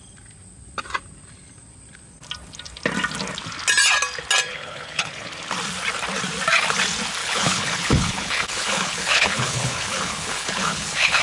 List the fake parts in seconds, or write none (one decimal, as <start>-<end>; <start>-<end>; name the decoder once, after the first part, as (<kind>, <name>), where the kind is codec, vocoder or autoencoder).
4.5-5.3 (codec, HILCodec); 7.2-11.2